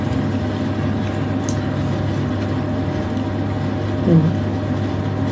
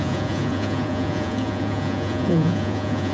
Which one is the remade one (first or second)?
second